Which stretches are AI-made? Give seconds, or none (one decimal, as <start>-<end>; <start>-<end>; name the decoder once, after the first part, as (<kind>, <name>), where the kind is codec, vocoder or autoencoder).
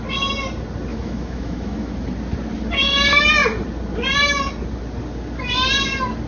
0.9-1.9 (autoencoder, DAC-VAE)